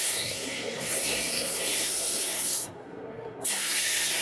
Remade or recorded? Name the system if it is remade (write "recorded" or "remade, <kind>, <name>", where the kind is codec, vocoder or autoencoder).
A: remade, codec, SNAC